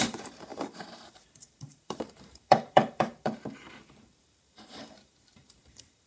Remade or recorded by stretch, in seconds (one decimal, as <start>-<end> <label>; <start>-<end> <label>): 0.0-6.1 remade